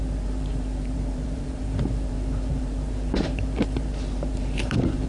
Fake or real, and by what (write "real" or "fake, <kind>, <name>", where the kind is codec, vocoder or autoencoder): fake, vocoder, BigVGAN v2